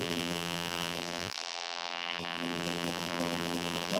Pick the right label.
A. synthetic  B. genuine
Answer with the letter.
A